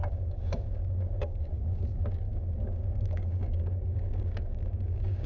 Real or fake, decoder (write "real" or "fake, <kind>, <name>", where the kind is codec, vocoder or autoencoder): fake, codec, DAC